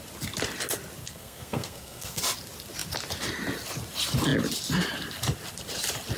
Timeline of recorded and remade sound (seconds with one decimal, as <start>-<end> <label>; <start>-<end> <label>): 0.0-1.0 recorded; 1.0-2.2 remade; 2.2-6.2 recorded